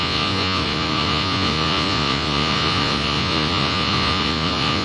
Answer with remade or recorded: remade